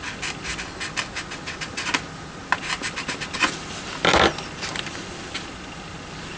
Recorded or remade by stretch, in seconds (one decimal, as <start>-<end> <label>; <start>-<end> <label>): 0.0-6.4 recorded